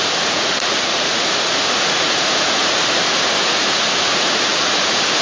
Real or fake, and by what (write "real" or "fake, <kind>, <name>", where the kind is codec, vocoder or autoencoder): fake, vocoder, Vocos